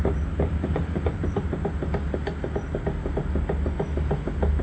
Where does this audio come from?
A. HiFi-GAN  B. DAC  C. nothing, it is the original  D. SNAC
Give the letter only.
C